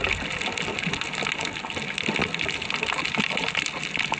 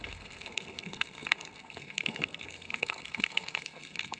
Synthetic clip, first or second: second